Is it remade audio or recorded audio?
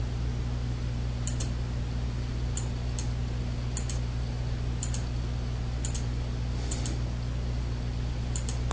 recorded